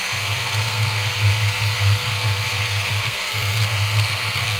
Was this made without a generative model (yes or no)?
no